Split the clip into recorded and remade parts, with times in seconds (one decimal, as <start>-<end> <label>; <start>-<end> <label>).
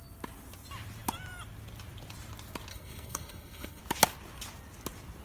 0.0-2.7 recorded; 2.7-3.8 remade; 3.8-5.2 recorded